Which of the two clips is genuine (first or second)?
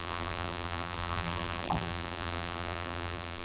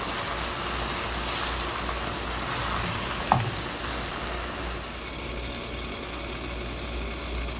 second